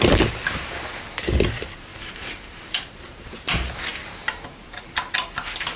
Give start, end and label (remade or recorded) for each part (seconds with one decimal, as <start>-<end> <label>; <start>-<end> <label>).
0.0-1.9 recorded; 1.9-3.2 remade; 3.2-3.9 recorded; 3.9-4.9 remade; 4.9-5.8 recorded

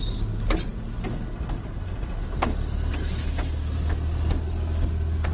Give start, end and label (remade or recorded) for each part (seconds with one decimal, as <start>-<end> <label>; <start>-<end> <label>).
0.0-5.3 recorded